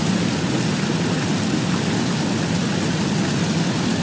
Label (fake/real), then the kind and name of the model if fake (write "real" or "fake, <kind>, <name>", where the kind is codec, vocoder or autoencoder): real